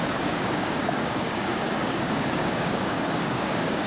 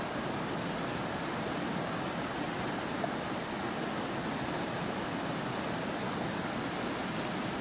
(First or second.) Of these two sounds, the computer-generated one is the first